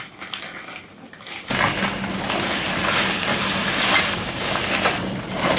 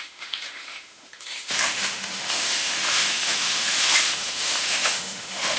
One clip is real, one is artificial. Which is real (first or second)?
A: first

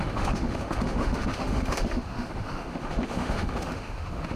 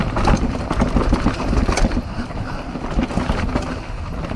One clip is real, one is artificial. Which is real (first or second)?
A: second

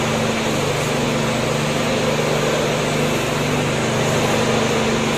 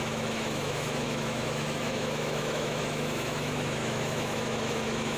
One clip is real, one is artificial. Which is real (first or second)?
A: first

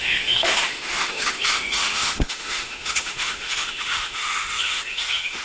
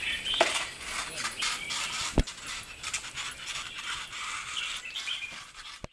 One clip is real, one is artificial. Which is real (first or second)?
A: second